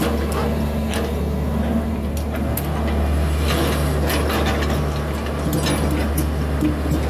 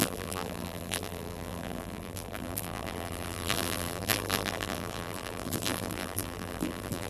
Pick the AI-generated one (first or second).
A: second